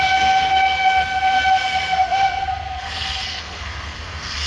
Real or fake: fake